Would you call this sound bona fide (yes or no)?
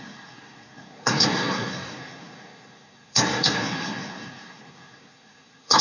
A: no